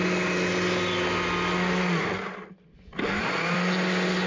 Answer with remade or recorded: recorded